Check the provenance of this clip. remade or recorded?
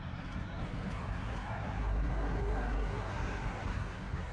remade